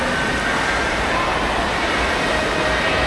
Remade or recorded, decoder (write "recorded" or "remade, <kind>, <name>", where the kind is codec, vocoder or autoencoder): recorded